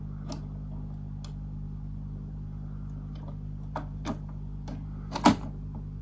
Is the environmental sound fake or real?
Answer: real